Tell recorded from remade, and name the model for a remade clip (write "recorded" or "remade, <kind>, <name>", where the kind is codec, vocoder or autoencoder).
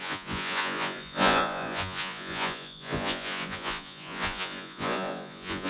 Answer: remade, vocoder, Vocos